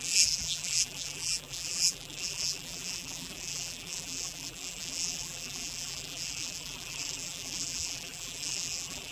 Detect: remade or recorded remade